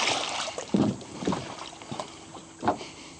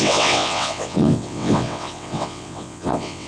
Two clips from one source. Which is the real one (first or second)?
first